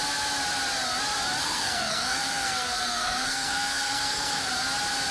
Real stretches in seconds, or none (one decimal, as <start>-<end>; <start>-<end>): 0.0-1.4; 4.5-5.1